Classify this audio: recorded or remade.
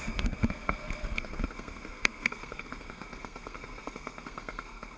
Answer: remade